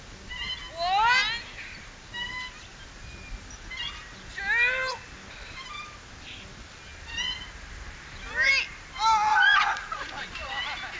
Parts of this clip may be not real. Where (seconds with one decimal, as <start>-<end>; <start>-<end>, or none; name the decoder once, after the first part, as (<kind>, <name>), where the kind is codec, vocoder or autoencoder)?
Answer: 9.3-10.3 (vocoder, Vocos)